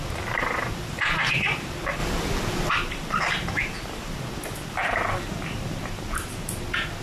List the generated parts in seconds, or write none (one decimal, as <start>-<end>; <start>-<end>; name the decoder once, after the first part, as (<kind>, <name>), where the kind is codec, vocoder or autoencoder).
0.0-2.0 (vocoder, BigVGAN v2); 2.7-7.0